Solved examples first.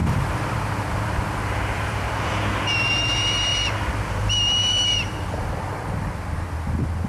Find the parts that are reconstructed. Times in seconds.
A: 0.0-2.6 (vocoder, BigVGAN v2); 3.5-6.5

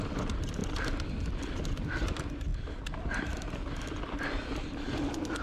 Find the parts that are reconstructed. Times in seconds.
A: none

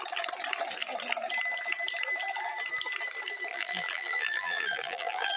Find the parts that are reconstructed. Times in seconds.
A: 3.5-5.4 (vocoder, BigVGAN v2)

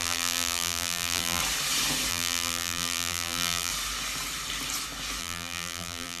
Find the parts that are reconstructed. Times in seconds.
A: 0.0-1.4 (vocoder, BigVGAN v2); 2.1-3.7; 5.2-6.2

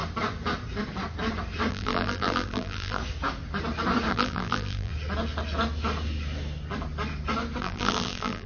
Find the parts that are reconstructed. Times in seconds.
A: 1.7-3.0 (vocoder, BigVGAN v2); 4.1-4.9; 7.6-8.5

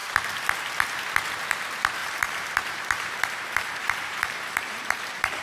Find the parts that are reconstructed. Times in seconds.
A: 2.0-5.4 (vocoder, BigVGAN v2)